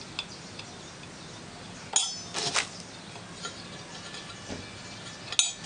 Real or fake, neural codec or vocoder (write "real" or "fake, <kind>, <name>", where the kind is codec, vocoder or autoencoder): real